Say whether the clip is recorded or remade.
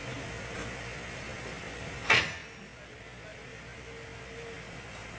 recorded